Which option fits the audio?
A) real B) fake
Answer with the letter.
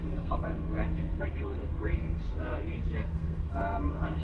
B